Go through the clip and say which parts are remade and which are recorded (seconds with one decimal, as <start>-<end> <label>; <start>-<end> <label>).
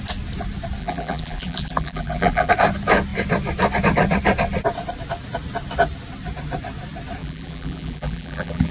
0.0-0.8 recorded; 0.8-2.5 remade; 2.5-7.2 recorded; 7.2-8.7 remade